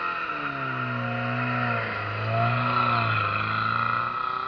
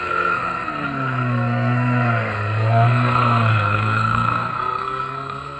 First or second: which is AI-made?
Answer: second